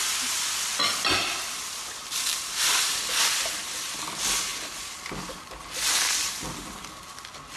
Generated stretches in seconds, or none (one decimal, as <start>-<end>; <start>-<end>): 0.8-4.0; 4.5-6.7